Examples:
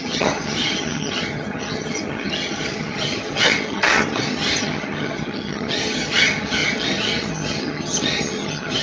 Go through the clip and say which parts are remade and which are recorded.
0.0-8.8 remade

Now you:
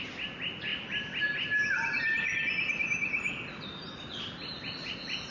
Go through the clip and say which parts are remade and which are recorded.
0.0-0.7 recorded; 0.7-1.2 remade; 1.2-5.3 recorded

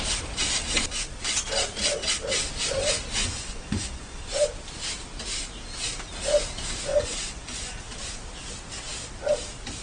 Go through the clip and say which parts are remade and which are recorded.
0.0-3.2 recorded; 3.2-4.3 remade; 4.3-6.9 recorded; 6.9-7.8 remade; 7.8-9.8 recorded

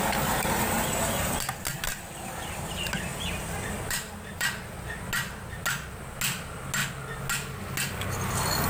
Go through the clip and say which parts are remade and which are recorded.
0.0-3.1 recorded; 3.1-5.1 remade; 5.1-8.7 recorded

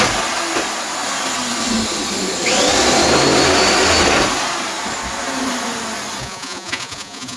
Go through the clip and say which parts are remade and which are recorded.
0.0-6.2 recorded; 6.2-7.4 remade

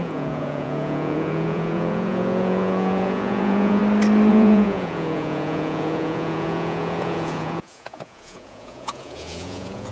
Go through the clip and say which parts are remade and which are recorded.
0.0-3.8 remade; 3.8-4.3 recorded; 4.3-9.9 remade

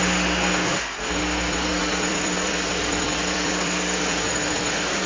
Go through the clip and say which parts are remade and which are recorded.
0.0-1.7 recorded; 1.7-5.1 remade

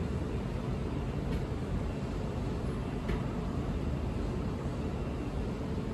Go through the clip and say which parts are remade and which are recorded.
0.0-0.8 recorded; 0.8-4.3 remade; 4.3-5.9 recorded